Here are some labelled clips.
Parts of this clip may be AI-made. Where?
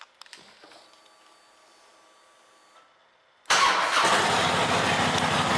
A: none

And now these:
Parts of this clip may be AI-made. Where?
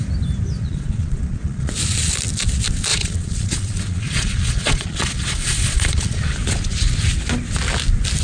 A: 0.6-1.7 (vocoder, Vocos); 2.9-6.2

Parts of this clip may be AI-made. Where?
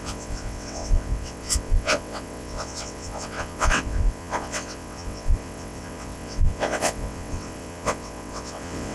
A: 0.0-8.9 (vocoder, WaveNeXt)